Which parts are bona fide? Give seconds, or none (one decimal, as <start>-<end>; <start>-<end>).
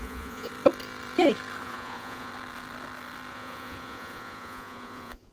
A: 0.5-1.6; 2.3-3.3